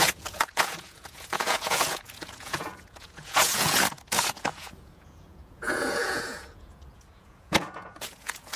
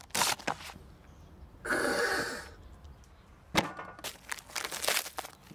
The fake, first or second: first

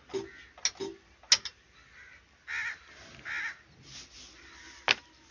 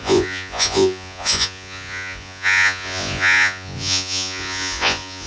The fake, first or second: second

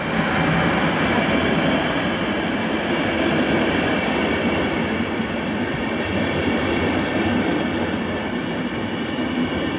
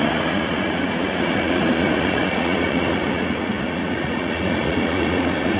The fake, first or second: second